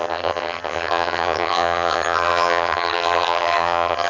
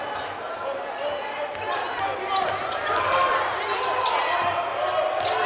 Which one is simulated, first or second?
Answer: first